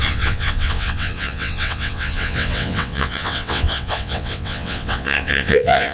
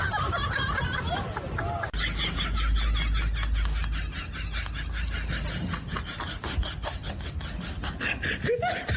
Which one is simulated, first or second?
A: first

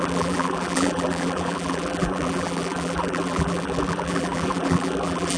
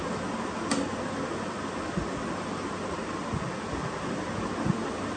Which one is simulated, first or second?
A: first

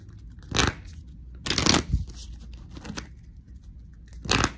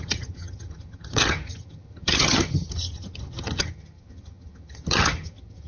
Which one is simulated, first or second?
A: second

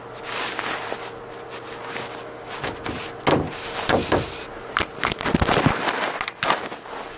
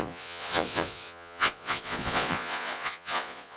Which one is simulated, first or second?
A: second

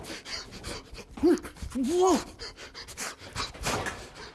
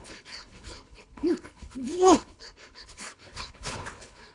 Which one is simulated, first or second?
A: second